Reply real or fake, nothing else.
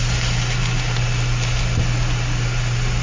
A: real